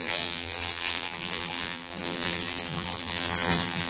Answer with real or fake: fake